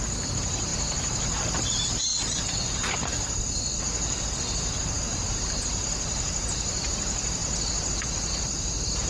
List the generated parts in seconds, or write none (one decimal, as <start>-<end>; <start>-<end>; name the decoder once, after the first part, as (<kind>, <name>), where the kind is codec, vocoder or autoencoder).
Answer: none